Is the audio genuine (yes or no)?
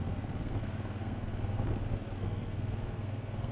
no